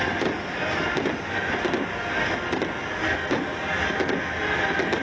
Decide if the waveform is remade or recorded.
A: recorded